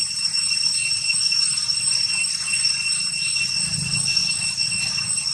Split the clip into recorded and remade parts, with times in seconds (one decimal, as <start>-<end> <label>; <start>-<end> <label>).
0.0-3.2 remade; 3.2-5.3 recorded